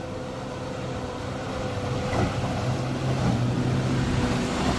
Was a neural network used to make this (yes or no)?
no